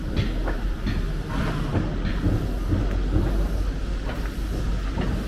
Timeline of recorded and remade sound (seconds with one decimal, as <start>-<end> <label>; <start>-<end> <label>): 0.0-5.3 recorded